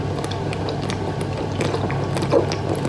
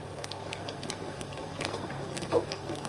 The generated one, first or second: second